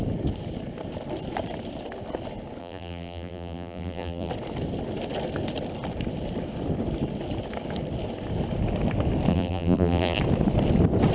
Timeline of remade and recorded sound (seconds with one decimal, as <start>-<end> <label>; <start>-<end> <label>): 0.0-2.6 recorded; 2.6-4.3 remade; 4.3-9.3 recorded; 9.3-10.2 remade; 10.2-11.1 recorded